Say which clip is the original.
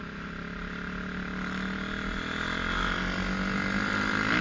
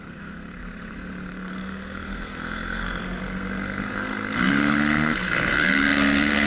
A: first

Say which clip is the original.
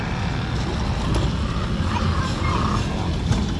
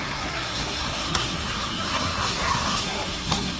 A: first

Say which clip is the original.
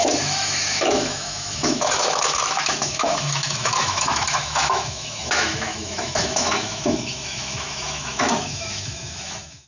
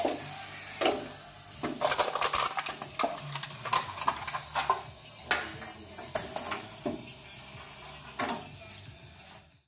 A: second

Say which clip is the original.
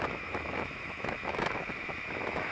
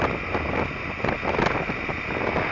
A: second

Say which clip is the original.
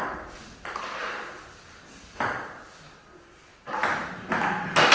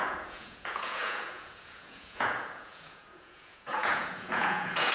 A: first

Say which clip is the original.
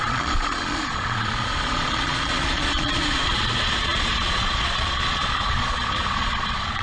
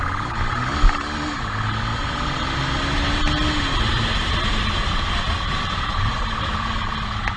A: second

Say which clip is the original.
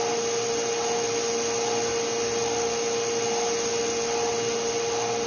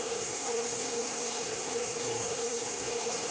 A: first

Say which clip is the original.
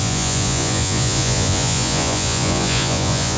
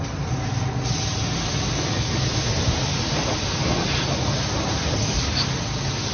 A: second